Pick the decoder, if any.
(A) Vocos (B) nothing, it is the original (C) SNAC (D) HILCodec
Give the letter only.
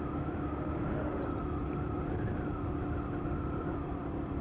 B